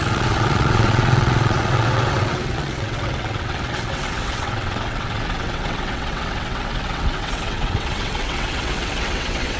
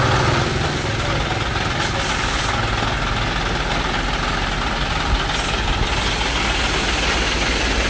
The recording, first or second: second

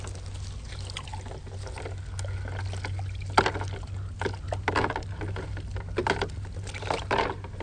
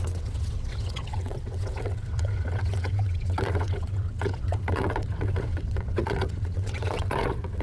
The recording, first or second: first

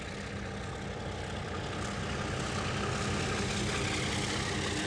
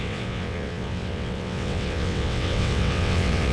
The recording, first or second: first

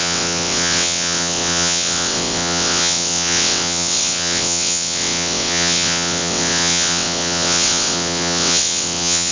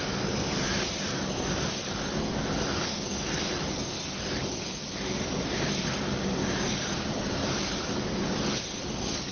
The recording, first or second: second